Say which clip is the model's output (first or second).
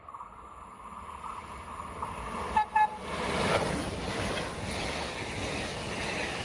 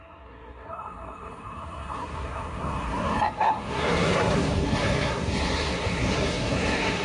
second